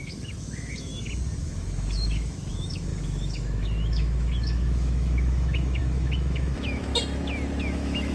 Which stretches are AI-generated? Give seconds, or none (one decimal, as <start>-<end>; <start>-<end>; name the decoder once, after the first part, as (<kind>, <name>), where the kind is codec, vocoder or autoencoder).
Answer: 0.0-0.9 (autoencoder, DAC-VAE); 1.4-6.9; 7.6-8.1